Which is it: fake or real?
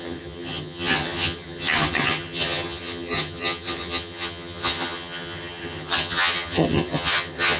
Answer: fake